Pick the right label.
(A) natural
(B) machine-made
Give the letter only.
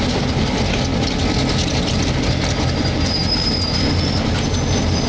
A